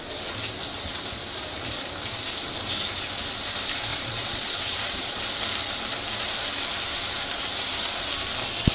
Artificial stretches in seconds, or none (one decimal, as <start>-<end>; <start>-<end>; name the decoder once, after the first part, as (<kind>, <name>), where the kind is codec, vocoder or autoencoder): 3.9-5.2 (vocoder, Vocos)

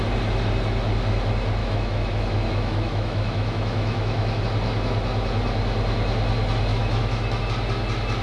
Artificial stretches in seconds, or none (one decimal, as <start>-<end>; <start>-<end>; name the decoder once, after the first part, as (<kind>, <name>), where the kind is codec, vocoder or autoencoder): 1.6-4.4 (autoencoder, DAC-VAE); 6.7-7.4

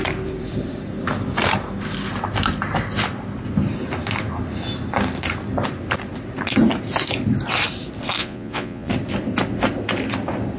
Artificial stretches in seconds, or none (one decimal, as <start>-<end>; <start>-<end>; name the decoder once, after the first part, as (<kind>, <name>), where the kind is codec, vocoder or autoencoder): 8.2-8.9 (vocoder, Vocos)

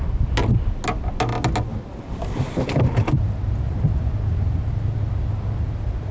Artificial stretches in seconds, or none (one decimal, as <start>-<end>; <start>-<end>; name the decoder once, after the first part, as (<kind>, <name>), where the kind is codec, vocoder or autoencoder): none

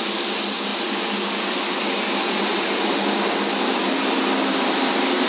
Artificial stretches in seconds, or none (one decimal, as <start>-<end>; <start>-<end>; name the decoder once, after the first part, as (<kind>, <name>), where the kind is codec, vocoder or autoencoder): none